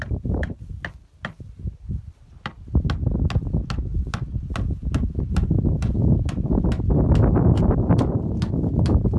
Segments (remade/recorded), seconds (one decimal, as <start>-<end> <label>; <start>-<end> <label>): 0.0-9.2 recorded